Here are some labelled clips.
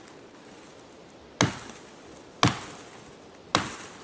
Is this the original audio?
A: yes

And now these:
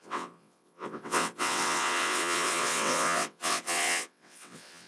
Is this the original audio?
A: no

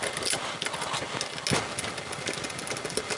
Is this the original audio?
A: yes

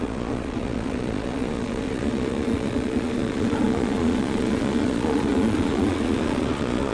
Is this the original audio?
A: no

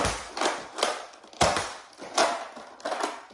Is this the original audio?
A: yes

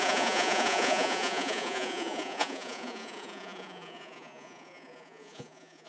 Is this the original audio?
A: no